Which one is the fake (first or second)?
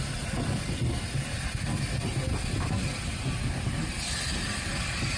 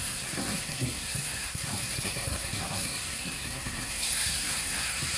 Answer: second